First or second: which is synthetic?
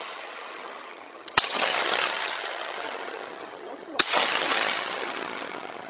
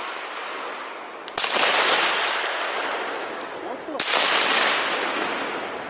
first